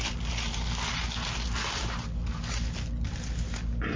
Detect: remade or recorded recorded